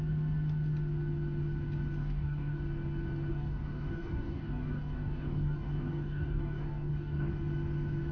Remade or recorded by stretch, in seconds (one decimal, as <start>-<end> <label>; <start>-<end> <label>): 0.0-2.0 recorded; 2.0-2.6 remade; 2.6-3.3 recorded; 3.3-7.3 remade; 7.3-8.1 recorded